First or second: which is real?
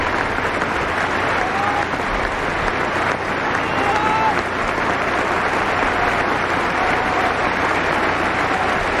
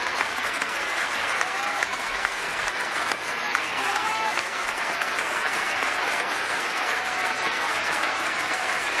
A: first